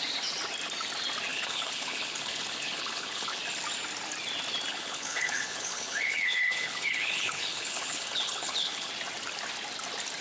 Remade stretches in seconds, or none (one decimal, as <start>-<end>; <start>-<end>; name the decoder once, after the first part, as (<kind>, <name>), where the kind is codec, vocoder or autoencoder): 1.3-3.4 (codec, HILCodec); 4.7-8.9